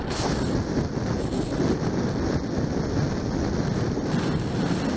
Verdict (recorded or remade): recorded